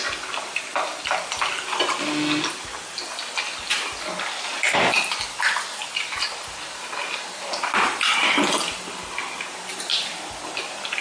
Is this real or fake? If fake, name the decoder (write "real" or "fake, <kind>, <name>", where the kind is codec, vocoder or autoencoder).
real